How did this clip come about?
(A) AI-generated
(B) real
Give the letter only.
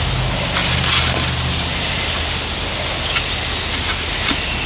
B